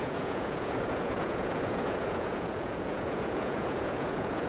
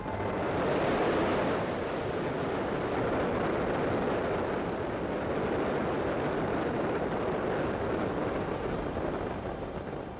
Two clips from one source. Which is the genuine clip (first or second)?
second